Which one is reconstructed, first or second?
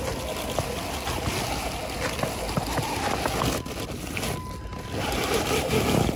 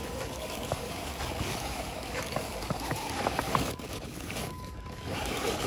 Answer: second